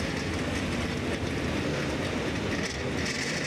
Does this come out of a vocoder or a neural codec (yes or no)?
no